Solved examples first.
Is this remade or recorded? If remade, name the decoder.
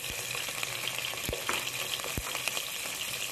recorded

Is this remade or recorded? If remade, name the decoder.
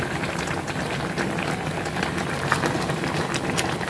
remade, vocoder, BigVGAN v2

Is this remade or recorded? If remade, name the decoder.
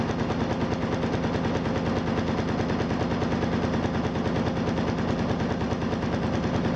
recorded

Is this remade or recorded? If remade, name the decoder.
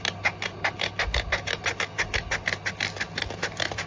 recorded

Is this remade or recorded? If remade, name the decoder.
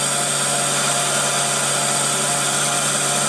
recorded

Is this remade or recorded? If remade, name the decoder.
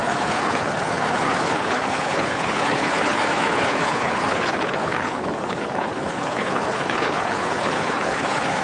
remade, codec, HILCodec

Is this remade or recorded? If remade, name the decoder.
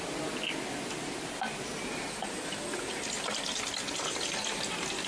recorded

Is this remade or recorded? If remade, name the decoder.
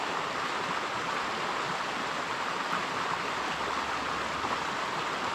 recorded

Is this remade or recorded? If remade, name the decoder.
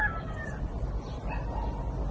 recorded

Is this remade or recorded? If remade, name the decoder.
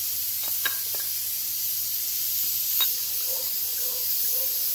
recorded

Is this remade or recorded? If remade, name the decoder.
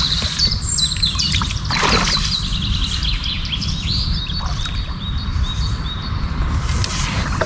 remade, vocoder, BigVGAN v2